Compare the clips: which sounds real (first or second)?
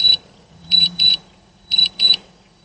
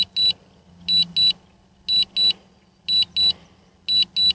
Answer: second